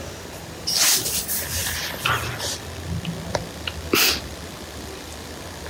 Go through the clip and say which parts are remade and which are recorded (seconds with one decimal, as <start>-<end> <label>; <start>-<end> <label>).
0.0-3.3 recorded; 3.3-5.7 remade